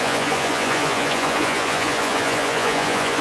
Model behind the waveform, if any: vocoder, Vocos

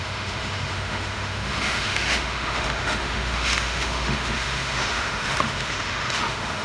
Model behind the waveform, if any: autoencoder, DAC-VAE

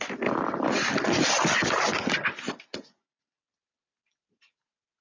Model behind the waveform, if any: none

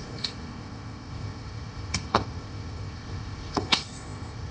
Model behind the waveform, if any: codec, ZipCodec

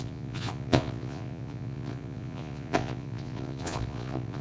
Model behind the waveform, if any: vocoder, Vocos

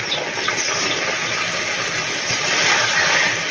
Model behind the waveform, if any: none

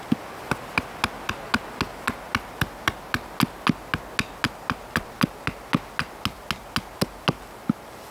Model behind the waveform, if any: none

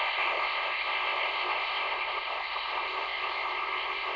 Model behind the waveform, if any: codec, ZipCodec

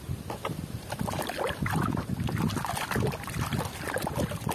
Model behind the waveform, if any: none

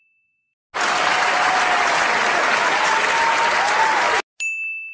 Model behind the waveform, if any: none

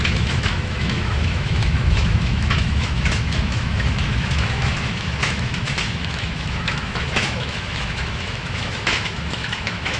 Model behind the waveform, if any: autoencoder, DAC-VAE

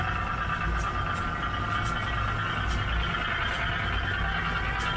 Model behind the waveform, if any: none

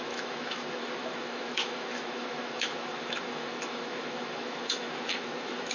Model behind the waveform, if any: autoencoder, DAC-VAE